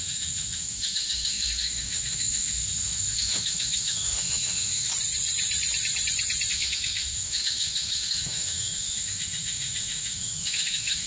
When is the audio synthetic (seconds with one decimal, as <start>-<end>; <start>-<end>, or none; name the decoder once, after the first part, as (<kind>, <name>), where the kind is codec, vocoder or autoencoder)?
0.0-4.9 (autoencoder, DAC-VAE); 6.5-11.1